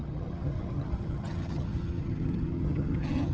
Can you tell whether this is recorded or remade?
remade